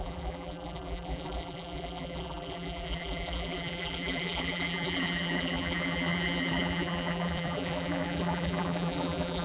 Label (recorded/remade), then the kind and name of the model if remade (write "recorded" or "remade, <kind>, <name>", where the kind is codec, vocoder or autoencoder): remade, vocoder, BigVGAN v2